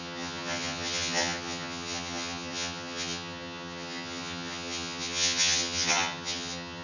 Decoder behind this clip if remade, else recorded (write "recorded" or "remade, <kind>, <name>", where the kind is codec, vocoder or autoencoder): remade, vocoder, HiFi-GAN